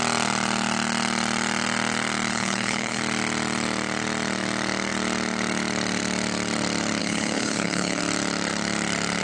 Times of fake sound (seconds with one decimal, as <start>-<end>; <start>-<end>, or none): 2.3-3.0; 7.0-8.0